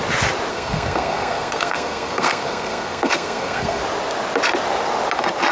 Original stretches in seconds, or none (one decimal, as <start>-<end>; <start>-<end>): 0.0-0.5; 3.8-5.5